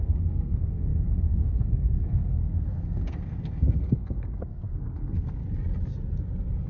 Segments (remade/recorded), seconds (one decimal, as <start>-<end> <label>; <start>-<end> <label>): 0.0-5.4 remade; 5.4-6.7 recorded